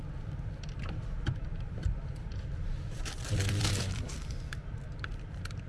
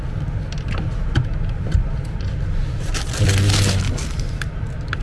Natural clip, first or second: second